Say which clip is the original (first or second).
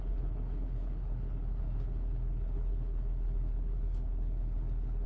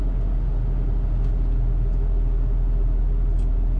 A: second